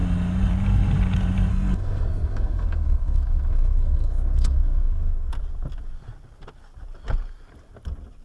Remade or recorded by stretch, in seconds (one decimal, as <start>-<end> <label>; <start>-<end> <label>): 0.0-1.5 recorded; 1.5-5.3 remade; 5.3-8.2 recorded

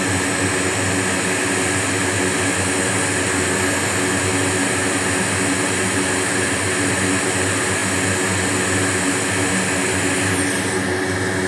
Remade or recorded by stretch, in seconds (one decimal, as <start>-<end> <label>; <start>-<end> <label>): 0.0-11.5 recorded

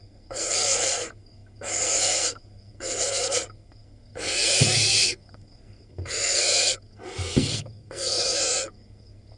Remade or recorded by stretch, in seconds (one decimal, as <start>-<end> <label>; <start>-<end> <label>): 0.0-9.4 remade

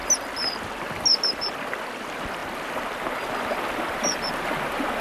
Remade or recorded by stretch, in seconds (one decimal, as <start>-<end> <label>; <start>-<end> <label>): 0.0-5.0 recorded

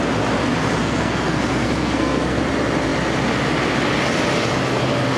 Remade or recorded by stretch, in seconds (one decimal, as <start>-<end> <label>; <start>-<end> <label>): 0.0-0.8 recorded; 0.8-2.4 remade; 2.4-5.2 recorded

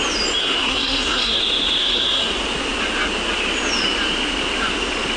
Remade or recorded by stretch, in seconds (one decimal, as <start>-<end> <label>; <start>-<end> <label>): 0.0-0.4 recorded; 0.4-1.4 remade; 1.4-1.8 recorded; 1.8-2.3 remade; 2.3-5.2 recorded